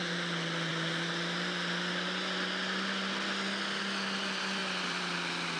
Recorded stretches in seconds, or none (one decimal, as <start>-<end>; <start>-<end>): 0.0-4.6